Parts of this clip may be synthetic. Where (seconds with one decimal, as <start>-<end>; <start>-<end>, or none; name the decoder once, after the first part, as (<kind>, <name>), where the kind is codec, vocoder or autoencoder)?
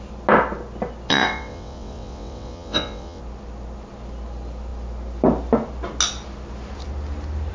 1.1-3.2 (vocoder, WaveNeXt)